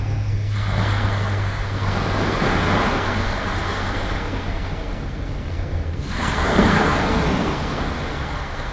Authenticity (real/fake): fake